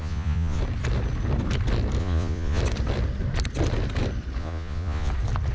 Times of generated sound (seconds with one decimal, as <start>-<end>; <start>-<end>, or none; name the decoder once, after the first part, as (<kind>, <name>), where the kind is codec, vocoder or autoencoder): 0.0-0.6 (vocoder, Vocos); 2.0-2.6; 4.4-5.1